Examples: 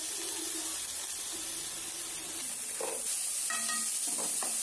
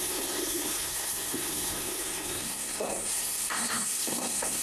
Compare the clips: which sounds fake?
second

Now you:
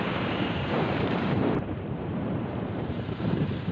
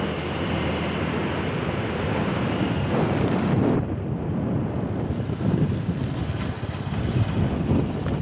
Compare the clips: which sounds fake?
first